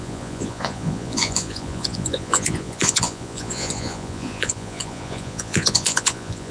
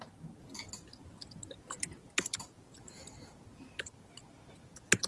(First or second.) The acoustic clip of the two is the second